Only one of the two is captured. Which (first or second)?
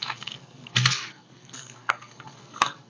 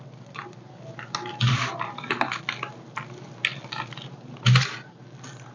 second